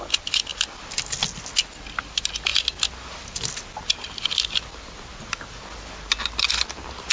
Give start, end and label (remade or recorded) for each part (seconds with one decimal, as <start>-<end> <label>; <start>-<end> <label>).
0.0-7.1 recorded